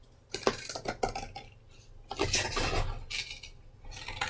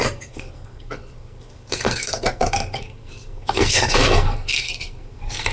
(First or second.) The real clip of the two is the first